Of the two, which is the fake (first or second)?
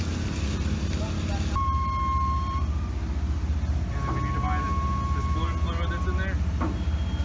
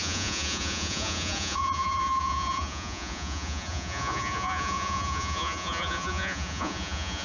second